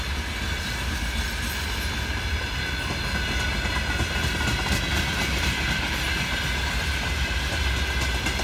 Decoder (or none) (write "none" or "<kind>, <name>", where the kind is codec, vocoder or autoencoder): none